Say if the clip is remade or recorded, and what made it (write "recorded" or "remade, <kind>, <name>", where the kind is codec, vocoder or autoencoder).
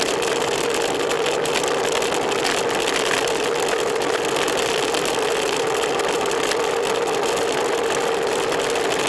recorded